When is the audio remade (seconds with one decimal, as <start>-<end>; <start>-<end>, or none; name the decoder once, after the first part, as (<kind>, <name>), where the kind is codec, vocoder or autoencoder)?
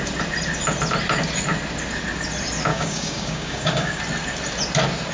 2.7-4.0 (codec, DAC)